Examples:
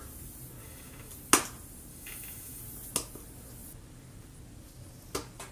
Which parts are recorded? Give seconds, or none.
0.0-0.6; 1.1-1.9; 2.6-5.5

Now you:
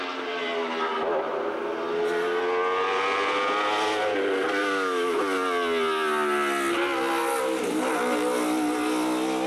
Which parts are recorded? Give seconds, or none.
0.0-4.6; 5.2-9.5

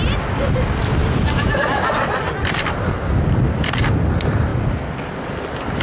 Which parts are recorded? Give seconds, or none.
0.0-5.8

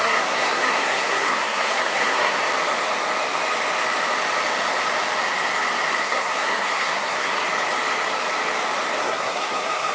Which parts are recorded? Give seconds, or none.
2.4-6.0; 7.4-9.0

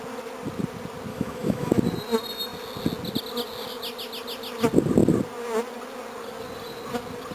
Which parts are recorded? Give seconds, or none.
0.0-1.1; 1.8-7.3

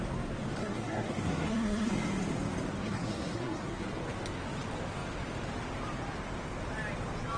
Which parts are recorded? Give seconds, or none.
0.0-0.6; 1.9-2.8; 3.9-7.4